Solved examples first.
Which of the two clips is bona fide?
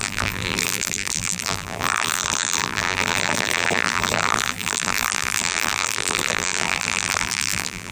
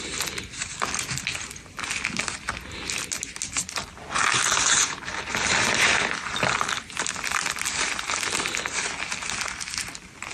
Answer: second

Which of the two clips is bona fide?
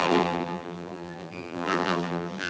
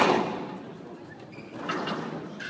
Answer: second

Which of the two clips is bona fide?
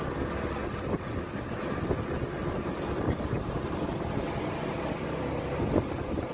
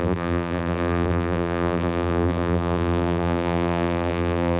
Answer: first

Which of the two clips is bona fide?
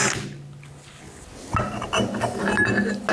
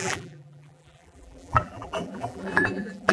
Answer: first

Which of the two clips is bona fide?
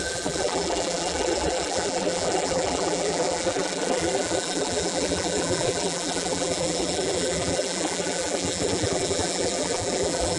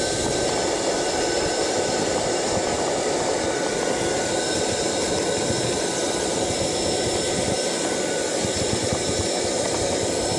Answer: second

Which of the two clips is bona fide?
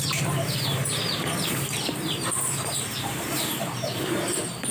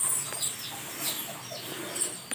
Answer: second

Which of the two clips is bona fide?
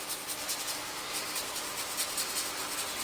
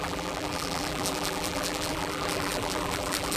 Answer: first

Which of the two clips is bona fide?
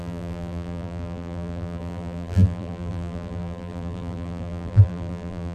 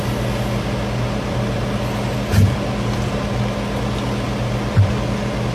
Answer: second